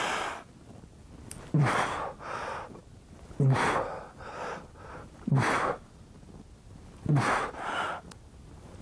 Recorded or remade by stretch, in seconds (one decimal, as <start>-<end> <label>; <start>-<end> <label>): 0.0-8.8 recorded